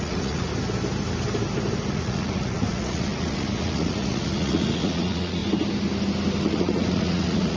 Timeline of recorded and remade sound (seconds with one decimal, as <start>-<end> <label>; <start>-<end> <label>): 0.0-0.5 remade; 0.5-1.9 recorded; 1.9-5.4 remade; 5.4-6.4 recorded; 6.4-7.6 remade